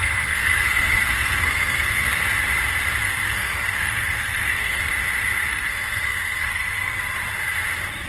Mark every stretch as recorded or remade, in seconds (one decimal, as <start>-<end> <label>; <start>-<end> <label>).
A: 0.0-2.2 remade; 2.2-3.0 recorded; 3.0-4.8 remade; 4.8-5.5 recorded; 5.5-7.0 remade; 7.0-8.1 recorded